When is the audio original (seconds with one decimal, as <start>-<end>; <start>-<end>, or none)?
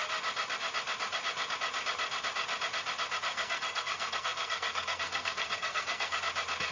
0.0-3.3; 6.2-6.7